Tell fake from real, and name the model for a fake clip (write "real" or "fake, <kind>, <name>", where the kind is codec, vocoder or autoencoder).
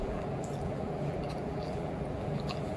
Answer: fake, vocoder, BigVGAN v2